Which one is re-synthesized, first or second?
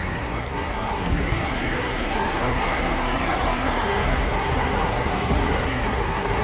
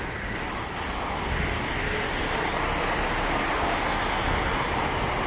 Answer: first